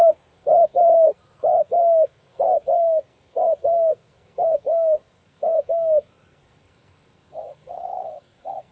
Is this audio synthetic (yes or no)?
yes